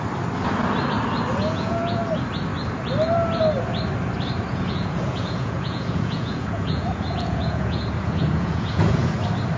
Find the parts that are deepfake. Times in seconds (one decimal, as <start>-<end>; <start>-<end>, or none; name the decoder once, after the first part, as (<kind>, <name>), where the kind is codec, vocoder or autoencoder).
1.4-2.0 (vocoder, Vocos); 4.5-9.1